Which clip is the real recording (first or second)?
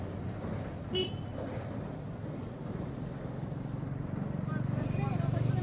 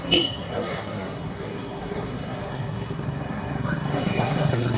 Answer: first